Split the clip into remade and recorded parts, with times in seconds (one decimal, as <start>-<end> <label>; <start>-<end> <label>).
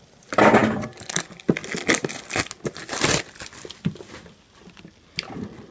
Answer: 0.0-5.7 recorded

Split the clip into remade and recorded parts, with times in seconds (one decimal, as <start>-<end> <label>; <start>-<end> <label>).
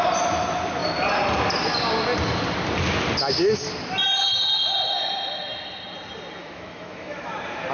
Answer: 0.0-6.4 recorded; 6.4-7.3 remade; 7.3-7.7 recorded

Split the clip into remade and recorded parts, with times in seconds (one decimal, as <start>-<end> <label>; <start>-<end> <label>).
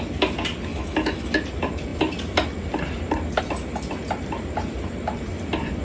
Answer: 0.0-0.7 recorded; 0.7-1.3 remade; 1.3-5.8 recorded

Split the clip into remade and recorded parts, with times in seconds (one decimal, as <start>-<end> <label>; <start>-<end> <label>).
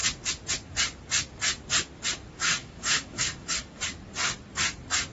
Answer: 0.0-2.6 recorded; 2.6-3.5 remade; 3.5-5.1 recorded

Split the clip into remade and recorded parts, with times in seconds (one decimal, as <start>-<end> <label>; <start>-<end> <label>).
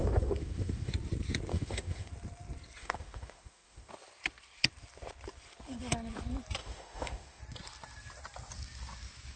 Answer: 0.0-0.9 remade; 0.9-1.5 recorded; 1.5-2.1 remade; 2.1-2.8 recorded; 2.8-3.9 remade; 3.9-6.6 recorded; 6.6-7.4 remade; 7.4-9.4 recorded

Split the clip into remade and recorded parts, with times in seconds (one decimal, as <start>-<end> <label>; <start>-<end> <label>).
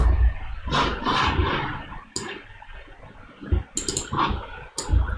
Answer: 0.0-5.2 recorded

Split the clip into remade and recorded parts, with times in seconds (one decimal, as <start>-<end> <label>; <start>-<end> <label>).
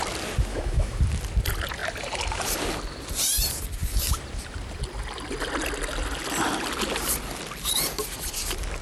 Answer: 0.0-0.5 recorded; 0.5-1.0 remade; 1.0-8.8 recorded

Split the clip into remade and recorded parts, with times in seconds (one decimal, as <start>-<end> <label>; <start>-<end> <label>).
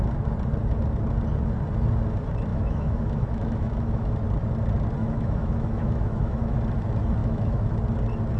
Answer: 0.0-2.5 recorded; 2.5-4.1 remade; 4.1-5.0 recorded; 5.0-6.6 remade; 6.6-7.2 recorded; 7.2-7.7 remade; 7.7-8.4 recorded